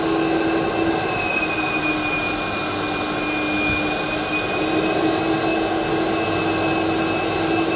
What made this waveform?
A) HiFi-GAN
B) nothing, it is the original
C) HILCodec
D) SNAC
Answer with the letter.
B